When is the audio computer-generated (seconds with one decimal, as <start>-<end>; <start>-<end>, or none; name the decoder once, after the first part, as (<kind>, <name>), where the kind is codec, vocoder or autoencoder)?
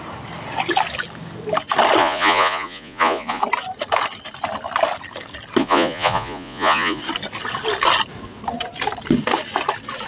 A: 2.0-3.4 (vocoder, Vocos); 5.6-7.0